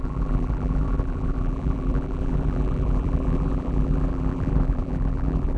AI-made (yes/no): yes